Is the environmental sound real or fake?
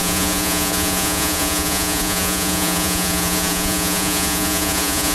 fake